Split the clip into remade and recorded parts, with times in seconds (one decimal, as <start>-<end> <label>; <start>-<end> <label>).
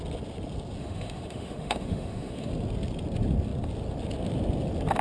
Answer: 0.0-0.8 recorded; 0.8-2.5 remade; 2.5-5.0 recorded